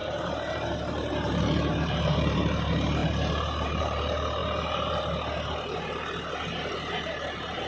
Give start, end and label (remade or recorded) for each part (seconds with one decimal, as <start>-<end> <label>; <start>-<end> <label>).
0.0-4.4 remade; 4.4-7.7 recorded